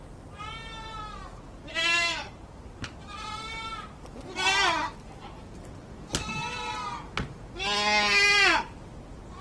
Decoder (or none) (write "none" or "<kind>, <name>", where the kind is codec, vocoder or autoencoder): none